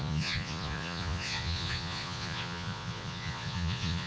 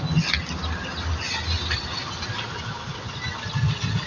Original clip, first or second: second